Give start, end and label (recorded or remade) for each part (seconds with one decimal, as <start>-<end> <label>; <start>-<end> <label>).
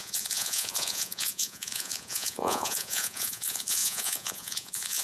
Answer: 0.0-5.0 remade